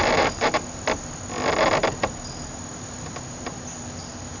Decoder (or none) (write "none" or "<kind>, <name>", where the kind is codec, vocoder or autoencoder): none